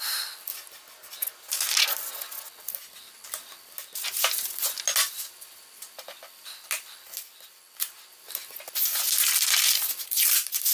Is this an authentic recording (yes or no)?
yes